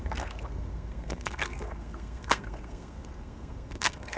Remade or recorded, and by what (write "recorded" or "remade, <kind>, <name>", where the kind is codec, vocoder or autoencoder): remade, codec, SNAC